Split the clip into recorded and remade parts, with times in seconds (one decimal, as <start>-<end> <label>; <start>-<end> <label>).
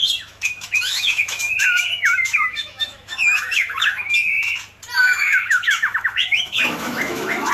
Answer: 0.0-4.5 remade; 4.5-5.0 recorded; 5.0-7.5 remade